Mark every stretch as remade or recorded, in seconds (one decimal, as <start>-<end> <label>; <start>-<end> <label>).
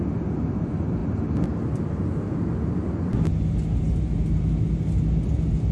0.0-5.7 recorded